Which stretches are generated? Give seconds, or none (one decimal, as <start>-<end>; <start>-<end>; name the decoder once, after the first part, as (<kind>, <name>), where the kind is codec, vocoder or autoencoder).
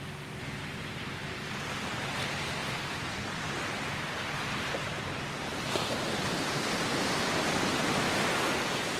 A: 1.2-2.1 (vocoder, BigVGAN v2); 2.6-7.7